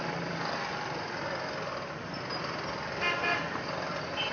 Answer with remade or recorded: recorded